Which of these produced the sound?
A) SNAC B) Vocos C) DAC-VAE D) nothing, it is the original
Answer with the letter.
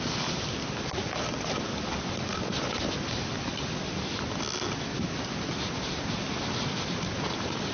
D